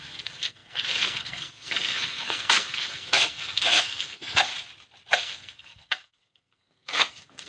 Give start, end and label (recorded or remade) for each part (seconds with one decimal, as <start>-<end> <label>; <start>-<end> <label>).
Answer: 0.0-4.5 remade; 4.5-5.1 recorded; 5.1-7.5 remade